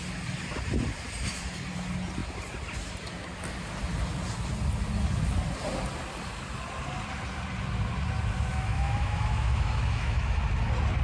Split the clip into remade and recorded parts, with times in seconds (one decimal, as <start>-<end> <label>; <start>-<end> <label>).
0.0-8.5 recorded; 8.5-10.4 remade; 10.4-11.0 recorded